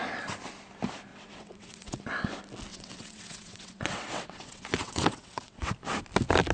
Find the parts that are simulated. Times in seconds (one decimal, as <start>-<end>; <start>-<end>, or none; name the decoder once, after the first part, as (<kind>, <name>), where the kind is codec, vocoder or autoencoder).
1.1-2.0 (vocoder, WaveNeXt); 2.7-5.7